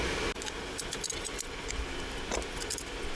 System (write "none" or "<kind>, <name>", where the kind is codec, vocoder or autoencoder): none